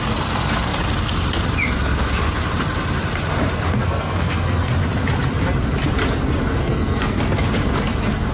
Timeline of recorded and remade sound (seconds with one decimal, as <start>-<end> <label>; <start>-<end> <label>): 0.0-3.7 recorded; 3.7-4.7 remade; 4.7-6.6 recorded; 6.6-7.2 remade; 7.2-8.3 recorded